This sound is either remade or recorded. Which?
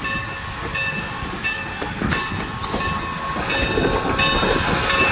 recorded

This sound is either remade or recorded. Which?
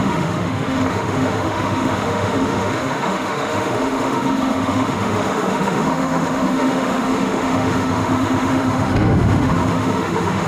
remade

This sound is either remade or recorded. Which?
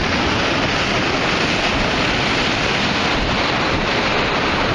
recorded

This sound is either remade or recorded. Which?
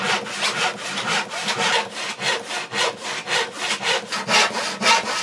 recorded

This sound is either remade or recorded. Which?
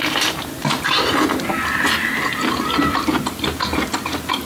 recorded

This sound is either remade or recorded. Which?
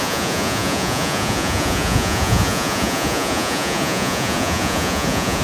remade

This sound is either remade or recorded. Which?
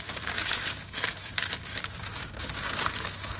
remade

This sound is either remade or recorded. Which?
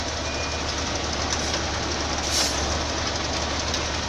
recorded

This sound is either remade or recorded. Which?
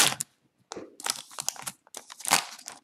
recorded